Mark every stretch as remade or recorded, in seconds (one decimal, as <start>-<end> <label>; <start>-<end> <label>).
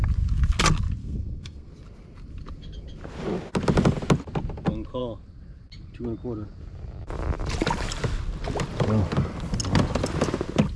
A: 0.0-1.0 recorded; 1.0-1.7 remade; 1.7-10.8 recorded